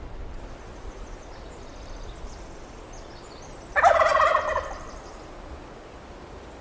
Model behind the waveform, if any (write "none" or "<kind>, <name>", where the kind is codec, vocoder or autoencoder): none